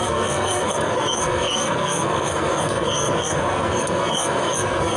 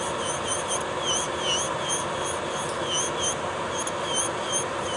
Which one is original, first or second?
second